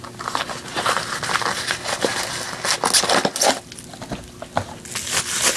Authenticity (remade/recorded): recorded